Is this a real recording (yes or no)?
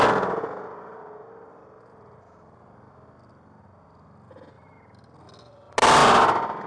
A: yes